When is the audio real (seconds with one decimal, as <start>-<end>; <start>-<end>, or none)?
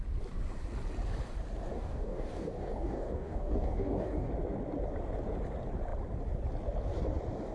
0.0-1.7; 4.3-7.5